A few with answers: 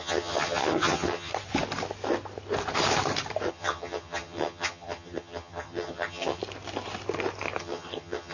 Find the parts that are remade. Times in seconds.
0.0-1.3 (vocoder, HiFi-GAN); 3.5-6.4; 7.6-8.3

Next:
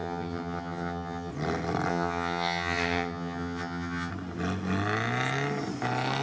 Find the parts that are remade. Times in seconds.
0.0-1.3 (vocoder, HiFi-GAN); 1.9-4.1

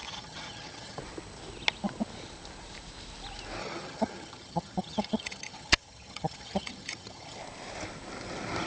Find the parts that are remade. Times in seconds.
0.0-1.0 (vocoder, HiFi-GAN); 3.6-7.4

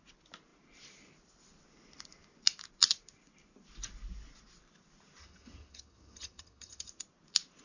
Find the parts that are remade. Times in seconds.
5.2-6.9 (vocoder, HiFi-GAN)

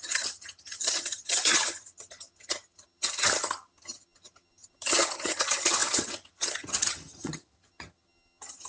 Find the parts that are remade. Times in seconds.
0.0-8.7 (vocoder, HiFi-GAN)

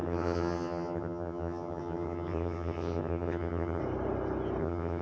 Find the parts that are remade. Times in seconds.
0.0-3.8 (vocoder, HiFi-GAN); 4.6-5.0

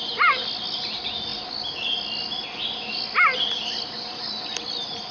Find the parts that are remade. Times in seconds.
none

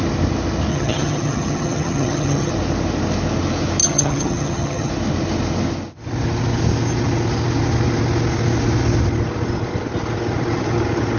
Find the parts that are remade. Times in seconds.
0.7-2.5 (vocoder, HiFi-GAN); 3.8-4.9